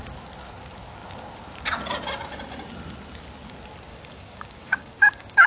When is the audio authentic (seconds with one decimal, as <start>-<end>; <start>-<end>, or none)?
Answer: 0.0-3.9